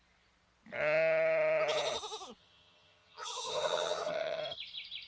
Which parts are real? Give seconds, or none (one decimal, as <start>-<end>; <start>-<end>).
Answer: 0.0-2.4; 4.4-5.1